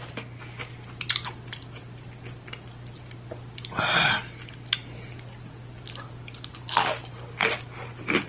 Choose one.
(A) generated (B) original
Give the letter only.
B